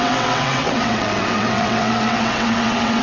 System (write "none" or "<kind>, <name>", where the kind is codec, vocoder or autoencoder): vocoder, WaveNeXt